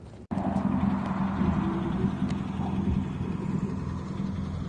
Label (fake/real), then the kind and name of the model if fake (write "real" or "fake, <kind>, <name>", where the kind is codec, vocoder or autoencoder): real